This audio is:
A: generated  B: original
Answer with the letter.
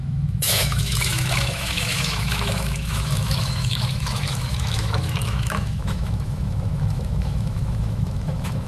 A